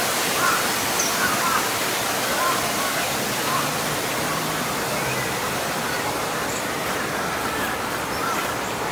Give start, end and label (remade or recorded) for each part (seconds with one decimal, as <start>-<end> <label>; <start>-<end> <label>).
0.0-5.4 recorded; 5.4-6.3 remade; 6.3-8.2 recorded; 8.2-8.9 remade